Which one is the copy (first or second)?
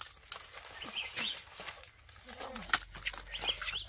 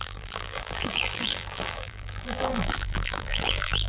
second